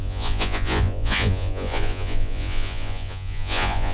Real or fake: fake